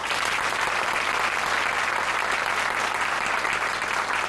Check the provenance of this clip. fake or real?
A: real